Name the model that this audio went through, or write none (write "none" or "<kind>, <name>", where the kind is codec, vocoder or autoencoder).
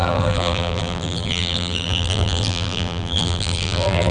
vocoder, BigVGAN v2